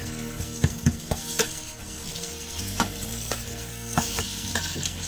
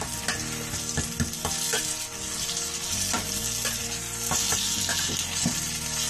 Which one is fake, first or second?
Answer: first